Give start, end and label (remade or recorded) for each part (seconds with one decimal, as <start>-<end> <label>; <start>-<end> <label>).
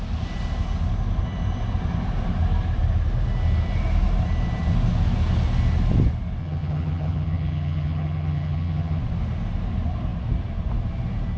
0.0-6.4 recorded; 6.4-9.0 remade; 9.0-11.4 recorded